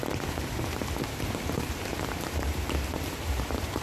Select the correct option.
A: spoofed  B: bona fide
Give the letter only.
A